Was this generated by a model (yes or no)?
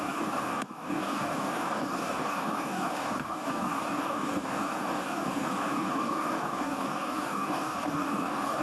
yes